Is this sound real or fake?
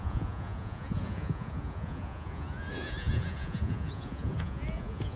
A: fake